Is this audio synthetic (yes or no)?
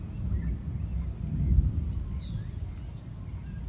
no